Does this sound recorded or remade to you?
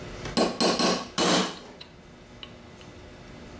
recorded